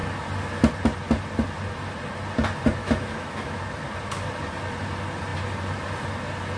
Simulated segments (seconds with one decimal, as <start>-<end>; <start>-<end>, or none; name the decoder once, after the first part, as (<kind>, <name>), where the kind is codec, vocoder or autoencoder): 2.8-3.6 (autoencoder, DAC-VAE)